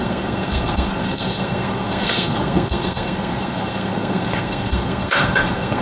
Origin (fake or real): fake